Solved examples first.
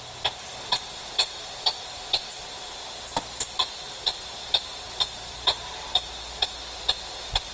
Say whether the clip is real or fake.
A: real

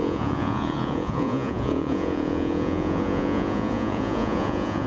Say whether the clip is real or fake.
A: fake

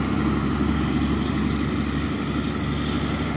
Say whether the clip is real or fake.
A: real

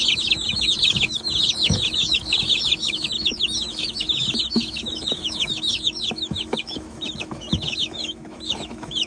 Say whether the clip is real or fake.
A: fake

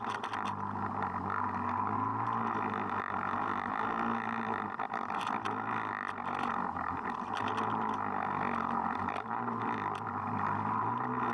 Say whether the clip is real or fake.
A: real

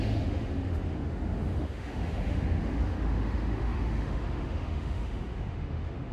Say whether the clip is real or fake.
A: fake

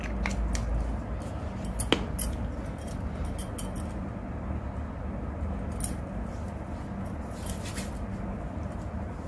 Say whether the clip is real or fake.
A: real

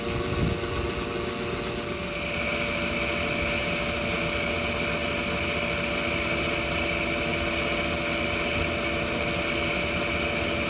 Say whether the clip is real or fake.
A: real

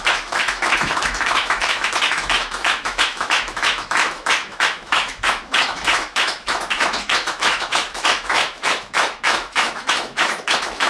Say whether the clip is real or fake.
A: fake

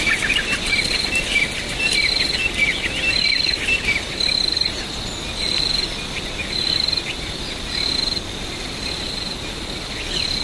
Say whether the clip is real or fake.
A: real